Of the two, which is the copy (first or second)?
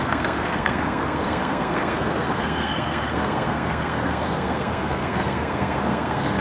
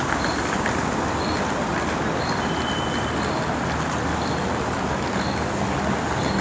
first